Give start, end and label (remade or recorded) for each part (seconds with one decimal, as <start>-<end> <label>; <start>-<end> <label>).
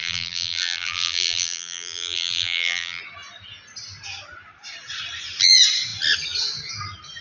0.0-3.0 remade; 3.0-7.2 recorded